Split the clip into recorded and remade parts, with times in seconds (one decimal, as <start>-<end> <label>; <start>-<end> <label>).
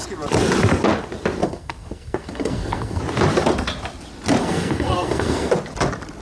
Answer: 0.0-1.4 recorded; 1.4-3.0 remade; 3.0-4.4 recorded; 4.4-5.5 remade; 5.5-6.2 recorded